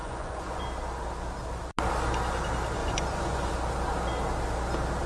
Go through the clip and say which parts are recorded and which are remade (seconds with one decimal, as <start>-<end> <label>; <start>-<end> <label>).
0.0-0.6 remade; 0.6-2.8 recorded; 2.8-3.5 remade; 3.5-5.1 recorded